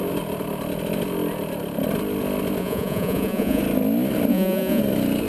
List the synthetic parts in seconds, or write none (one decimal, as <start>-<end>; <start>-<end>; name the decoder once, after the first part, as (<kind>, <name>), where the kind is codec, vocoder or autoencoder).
2.6-3.6 (vocoder, Vocos); 4.3-4.8

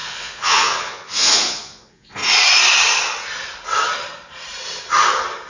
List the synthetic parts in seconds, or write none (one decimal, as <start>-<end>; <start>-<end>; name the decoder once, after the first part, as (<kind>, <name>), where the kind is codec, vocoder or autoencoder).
0.0-2.2 (vocoder, Vocos)